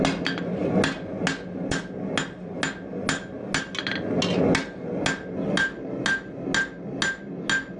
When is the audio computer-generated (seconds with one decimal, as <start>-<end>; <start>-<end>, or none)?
none